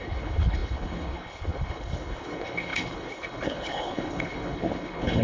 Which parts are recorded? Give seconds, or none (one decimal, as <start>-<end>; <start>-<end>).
none